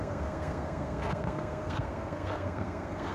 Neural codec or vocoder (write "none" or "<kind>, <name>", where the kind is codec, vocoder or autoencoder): codec, SNAC